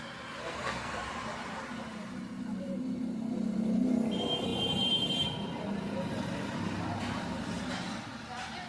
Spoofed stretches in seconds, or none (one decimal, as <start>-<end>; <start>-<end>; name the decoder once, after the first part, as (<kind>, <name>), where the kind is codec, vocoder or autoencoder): 0.4-1.0 (codec, SNAC)